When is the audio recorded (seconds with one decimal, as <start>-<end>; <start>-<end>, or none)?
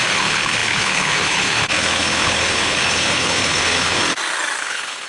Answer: 4.0-4.6